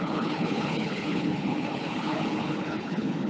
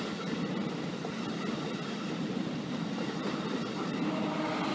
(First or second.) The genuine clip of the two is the second